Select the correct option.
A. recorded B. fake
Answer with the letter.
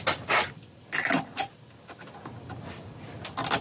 A